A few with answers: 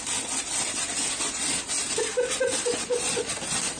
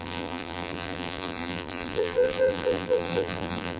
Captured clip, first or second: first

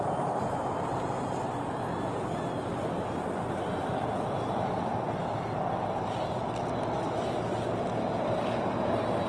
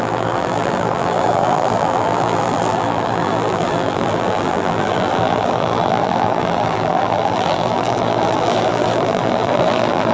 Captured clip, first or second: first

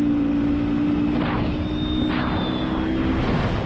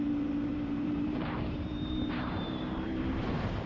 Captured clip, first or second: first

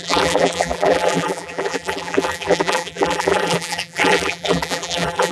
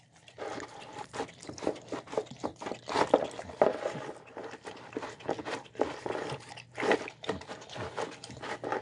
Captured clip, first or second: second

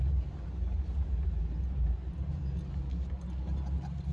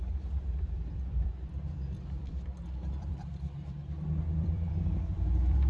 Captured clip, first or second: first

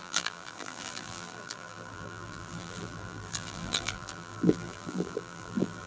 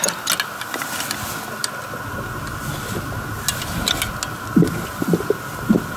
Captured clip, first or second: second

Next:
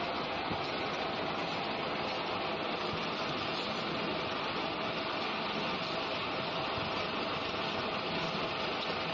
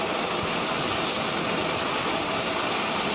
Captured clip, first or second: first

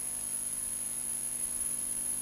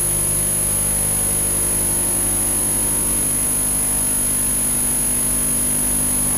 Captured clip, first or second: second